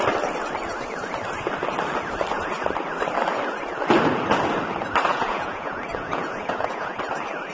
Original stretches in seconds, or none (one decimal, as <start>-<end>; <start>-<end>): 0.0-5.1; 7.0-7.5